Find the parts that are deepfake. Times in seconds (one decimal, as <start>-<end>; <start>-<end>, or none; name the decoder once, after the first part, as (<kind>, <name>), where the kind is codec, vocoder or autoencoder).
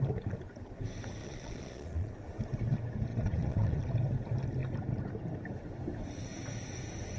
1.2-2.1 (vocoder, Vocos); 3.1-3.8